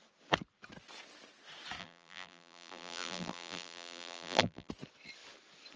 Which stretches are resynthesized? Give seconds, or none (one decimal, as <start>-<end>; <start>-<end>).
1.8-4.7